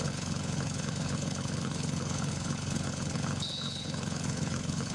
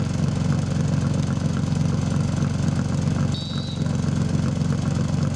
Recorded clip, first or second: second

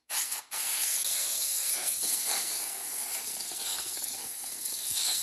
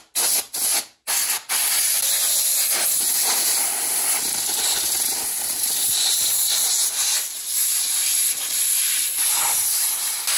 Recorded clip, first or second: second